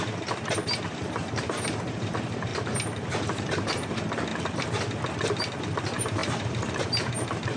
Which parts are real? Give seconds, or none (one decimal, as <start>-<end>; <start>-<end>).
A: 2.5-3.1; 4.3-5.6